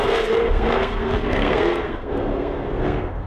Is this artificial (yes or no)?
yes